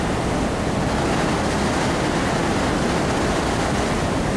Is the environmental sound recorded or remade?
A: recorded